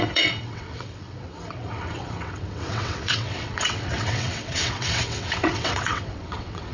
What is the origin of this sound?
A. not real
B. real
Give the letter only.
A